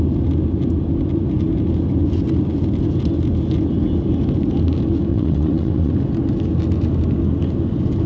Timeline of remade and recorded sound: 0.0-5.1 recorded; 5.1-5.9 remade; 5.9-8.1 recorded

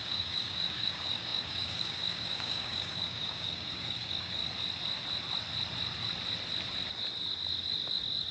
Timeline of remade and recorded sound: 0.0-4.4 remade; 4.4-8.3 recorded

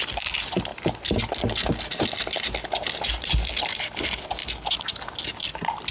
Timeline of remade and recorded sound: 0.0-0.7 remade; 0.7-3.3 recorded; 3.3-4.4 remade; 4.4-5.4 recorded; 5.4-5.9 remade

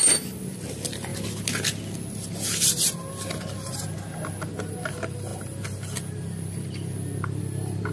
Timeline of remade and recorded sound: 0.0-1.1 remade; 1.1-4.5 recorded; 4.5-7.9 remade

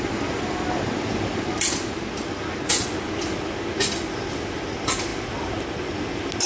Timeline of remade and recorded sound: 0.0-6.5 recorded

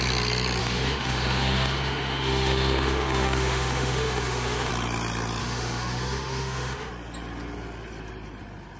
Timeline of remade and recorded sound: 0.0-0.6 recorded; 0.6-4.7 remade; 4.7-5.4 recorded; 5.4-6.9 remade; 6.9-8.8 recorded